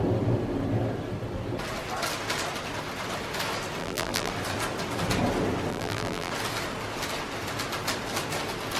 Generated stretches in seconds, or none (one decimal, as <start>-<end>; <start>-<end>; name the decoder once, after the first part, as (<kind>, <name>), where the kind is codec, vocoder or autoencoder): 3.8-4.3 (vocoder, BigVGAN v2); 5.7-6.3